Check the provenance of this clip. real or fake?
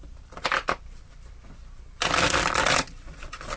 fake